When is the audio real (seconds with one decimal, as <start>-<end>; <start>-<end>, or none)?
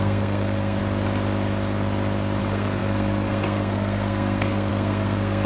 0.8-2.4